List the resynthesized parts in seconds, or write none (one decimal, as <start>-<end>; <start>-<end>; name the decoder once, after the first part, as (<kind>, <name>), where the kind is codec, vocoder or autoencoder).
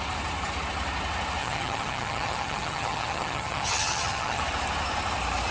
1.4-4.4 (vocoder, HiFi-GAN)